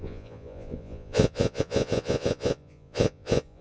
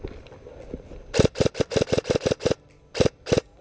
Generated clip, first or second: first